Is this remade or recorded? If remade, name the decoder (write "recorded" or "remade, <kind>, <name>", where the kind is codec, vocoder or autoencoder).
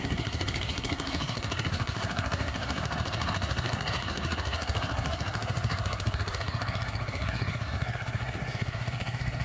remade, codec, SNAC